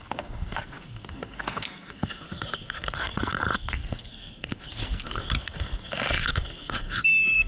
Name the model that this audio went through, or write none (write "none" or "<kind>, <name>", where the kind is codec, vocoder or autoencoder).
codec, SNAC